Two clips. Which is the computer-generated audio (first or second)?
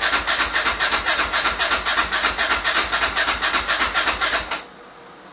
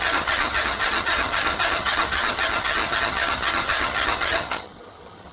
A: second